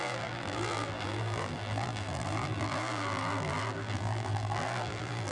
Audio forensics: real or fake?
fake